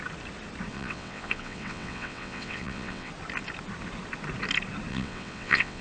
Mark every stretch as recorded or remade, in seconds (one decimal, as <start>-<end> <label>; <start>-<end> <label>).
0.0-0.7 recorded; 0.7-3.1 remade; 3.1-4.9 recorded; 4.9-5.8 remade